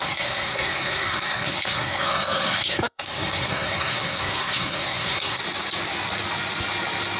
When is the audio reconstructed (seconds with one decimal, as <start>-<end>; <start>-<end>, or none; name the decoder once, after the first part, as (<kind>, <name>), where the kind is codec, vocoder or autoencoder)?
0.0-5.4 (codec, SNAC)